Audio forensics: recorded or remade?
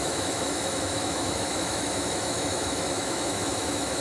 remade